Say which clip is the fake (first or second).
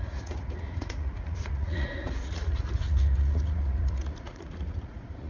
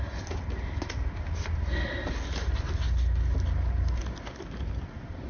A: first